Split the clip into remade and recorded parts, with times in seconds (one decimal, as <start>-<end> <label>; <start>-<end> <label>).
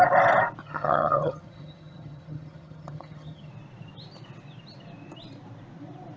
0.0-0.6 recorded; 0.6-3.5 remade; 3.5-6.2 recorded